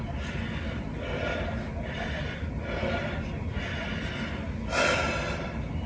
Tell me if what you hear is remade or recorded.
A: recorded